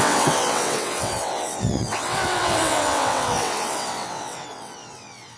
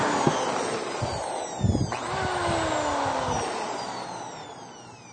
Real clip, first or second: second